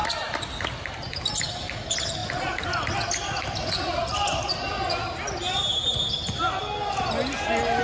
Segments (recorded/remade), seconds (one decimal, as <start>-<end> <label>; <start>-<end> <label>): 0.0-7.8 recorded